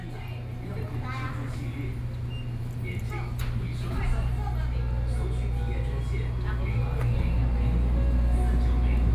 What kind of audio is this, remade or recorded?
recorded